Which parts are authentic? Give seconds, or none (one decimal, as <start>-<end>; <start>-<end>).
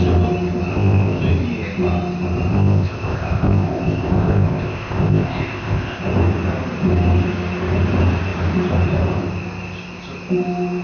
0.0-0.7; 1.2-2.5; 6.0-10.8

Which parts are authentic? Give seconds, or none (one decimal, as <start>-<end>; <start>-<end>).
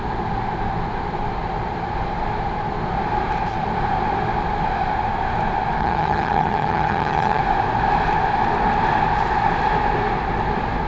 0.0-5.8; 7.4-10.9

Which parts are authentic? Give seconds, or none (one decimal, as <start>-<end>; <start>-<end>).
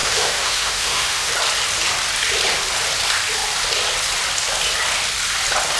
1.3-5.8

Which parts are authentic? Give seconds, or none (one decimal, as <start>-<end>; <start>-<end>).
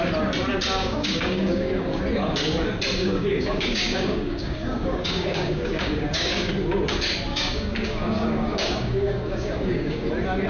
0.0-0.8; 2.0-3.0; 6.5-7.3; 10.1-10.5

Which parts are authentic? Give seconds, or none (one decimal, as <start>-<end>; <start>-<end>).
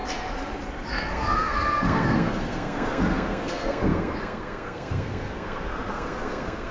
0.0-0.9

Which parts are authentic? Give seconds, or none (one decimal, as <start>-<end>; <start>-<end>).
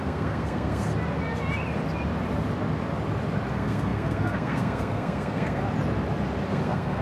0.9-3.5; 5.6-6.5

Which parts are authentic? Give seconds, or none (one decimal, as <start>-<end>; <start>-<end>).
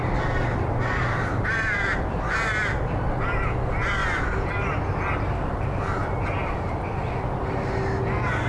0.0-1.3; 2.3-4.0; 4.7-8.5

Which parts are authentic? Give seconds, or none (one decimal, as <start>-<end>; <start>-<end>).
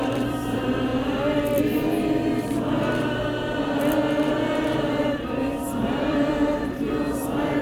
0.9-5.0